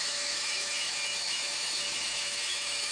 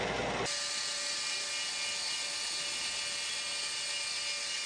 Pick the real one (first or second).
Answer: second